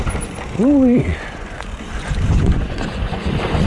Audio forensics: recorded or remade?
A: remade